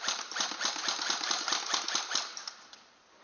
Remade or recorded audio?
recorded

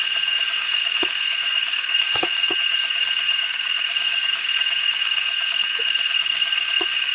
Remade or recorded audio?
remade